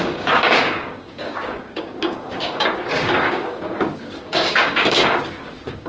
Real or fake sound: fake